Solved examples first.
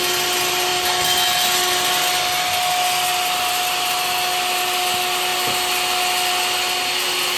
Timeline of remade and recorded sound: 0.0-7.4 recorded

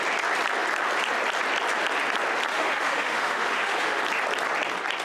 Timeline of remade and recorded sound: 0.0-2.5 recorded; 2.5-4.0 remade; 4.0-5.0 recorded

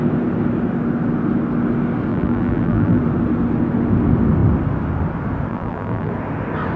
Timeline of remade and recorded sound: 0.0-2.1 recorded; 2.1-3.0 remade; 3.0-5.5 recorded; 5.5-6.1 remade; 6.1-6.8 recorded

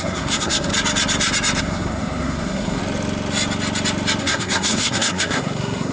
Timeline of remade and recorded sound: 0.0-0.7 remade; 0.7-1.6 recorded; 1.6-2.8 remade; 2.8-4.2 recorded; 4.2-5.9 remade

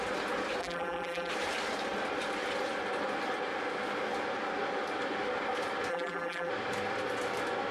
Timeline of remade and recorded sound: 0.0-0.6 recorded; 0.6-1.3 remade; 1.3-5.9 recorded; 5.9-6.5 remade; 6.5-7.7 recorded

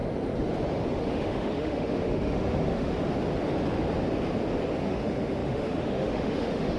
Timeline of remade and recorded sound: 0.0-1.0 recorded; 1.0-2.9 remade; 2.9-4.9 recorded; 4.9-6.8 remade

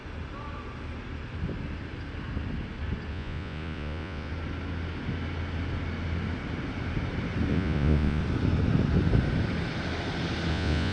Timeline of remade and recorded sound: 0.0-3.1 recorded; 3.1-4.3 remade; 4.3-7.5 recorded; 7.5-8.2 remade; 8.2-10.5 recorded; 10.5-10.9 remade